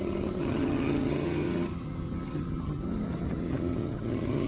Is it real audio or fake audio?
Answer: fake